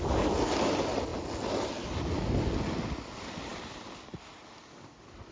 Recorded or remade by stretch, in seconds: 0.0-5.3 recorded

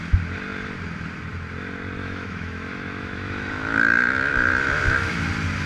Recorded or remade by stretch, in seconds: 0.0-2.0 recorded; 2.0-5.3 remade; 5.3-5.7 recorded

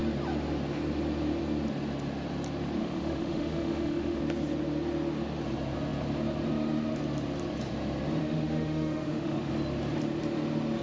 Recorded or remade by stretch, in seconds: 0.0-2.8 recorded; 2.8-4.2 remade; 4.2-8.2 recorded; 8.2-9.5 remade; 9.5-10.8 recorded

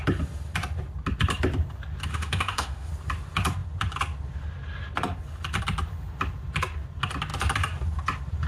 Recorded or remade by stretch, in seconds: 0.0-2.1 recorded; 2.1-2.9 remade; 2.9-8.5 recorded

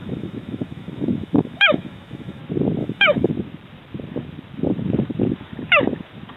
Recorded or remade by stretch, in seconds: 0.0-2.4 remade; 2.4-2.8 recorded; 2.8-3.3 remade; 3.3-6.4 recorded

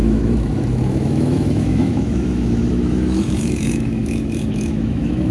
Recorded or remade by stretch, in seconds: 0.0-5.3 remade

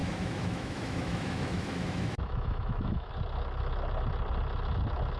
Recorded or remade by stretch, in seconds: 0.0-3.1 remade; 3.1-5.2 recorded